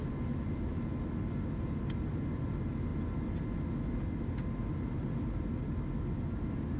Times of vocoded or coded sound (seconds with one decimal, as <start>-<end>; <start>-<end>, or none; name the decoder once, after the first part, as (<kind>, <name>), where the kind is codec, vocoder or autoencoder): none